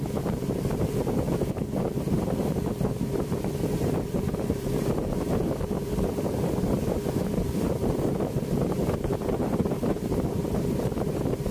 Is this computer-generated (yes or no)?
yes